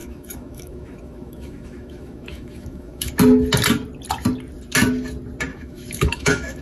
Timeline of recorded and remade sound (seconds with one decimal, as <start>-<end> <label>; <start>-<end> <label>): 0.0-3.1 remade; 3.1-5.5 recorded; 5.5-6.6 remade